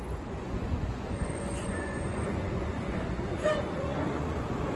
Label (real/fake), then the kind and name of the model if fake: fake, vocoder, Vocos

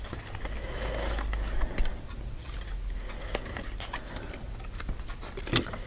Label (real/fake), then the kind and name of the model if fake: real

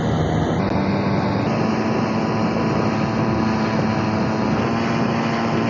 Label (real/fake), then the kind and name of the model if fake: real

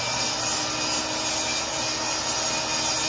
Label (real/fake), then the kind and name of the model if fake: real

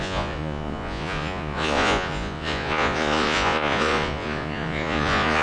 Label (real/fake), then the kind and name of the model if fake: fake, vocoder, Vocos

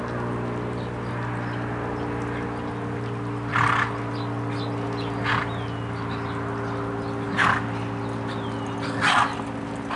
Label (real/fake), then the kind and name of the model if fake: real